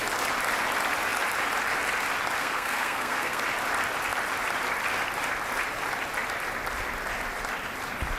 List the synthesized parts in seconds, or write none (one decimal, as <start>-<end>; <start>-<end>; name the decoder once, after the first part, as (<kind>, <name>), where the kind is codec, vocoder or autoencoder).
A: 2.4-3.4 (codec, SNAC)